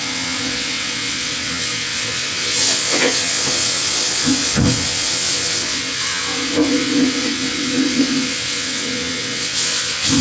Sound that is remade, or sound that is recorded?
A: remade